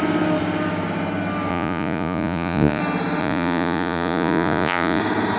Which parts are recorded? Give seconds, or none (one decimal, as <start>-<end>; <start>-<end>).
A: 0.0-1.5; 2.8-3.2; 5.0-5.4